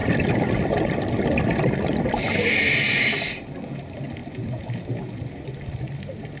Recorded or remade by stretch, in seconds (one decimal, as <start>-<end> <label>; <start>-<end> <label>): 0.0-6.4 recorded